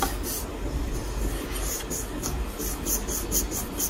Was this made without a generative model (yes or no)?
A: yes